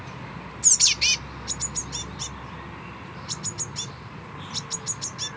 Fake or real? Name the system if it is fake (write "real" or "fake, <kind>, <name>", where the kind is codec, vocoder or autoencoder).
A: real